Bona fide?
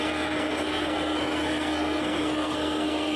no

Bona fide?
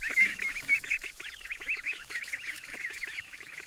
no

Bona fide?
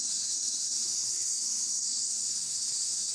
no